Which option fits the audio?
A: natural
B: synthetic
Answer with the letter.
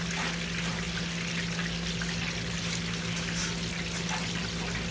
A